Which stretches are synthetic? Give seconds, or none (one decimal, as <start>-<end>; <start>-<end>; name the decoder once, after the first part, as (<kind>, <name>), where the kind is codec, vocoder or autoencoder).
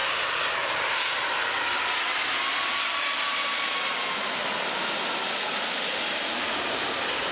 none